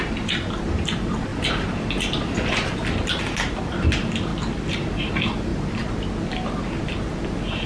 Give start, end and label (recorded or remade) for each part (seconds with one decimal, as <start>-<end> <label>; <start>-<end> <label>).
0.0-7.7 recorded